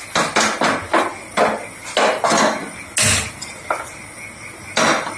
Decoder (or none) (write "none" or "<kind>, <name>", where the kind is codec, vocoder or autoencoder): none